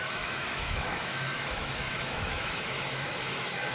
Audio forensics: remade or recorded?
remade